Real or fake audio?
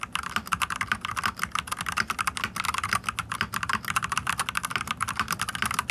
real